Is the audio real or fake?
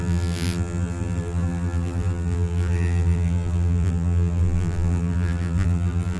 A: fake